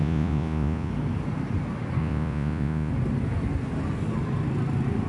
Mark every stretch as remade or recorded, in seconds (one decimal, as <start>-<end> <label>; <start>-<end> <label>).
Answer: 0.0-0.9 remade; 0.9-2.0 recorded; 2.0-2.9 remade; 2.9-5.1 recorded